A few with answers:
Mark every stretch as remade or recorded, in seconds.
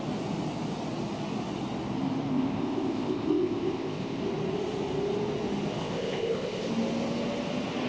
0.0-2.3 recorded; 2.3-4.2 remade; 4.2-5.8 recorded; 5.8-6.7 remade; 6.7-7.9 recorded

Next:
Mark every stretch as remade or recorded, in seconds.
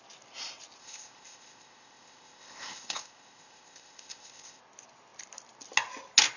0.0-0.8 recorded; 0.8-4.6 remade; 4.6-6.4 recorded